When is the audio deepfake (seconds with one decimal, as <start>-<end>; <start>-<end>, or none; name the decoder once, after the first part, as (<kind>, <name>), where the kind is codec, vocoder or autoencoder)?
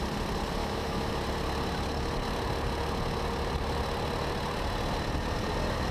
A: 0.6-1.1 (autoencoder, DAC-VAE)